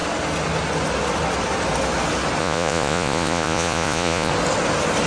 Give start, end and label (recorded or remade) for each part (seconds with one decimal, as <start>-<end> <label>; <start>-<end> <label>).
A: 0.0-2.4 recorded; 2.4-4.3 remade; 4.3-5.1 recorded